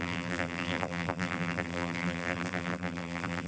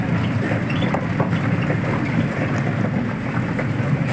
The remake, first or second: first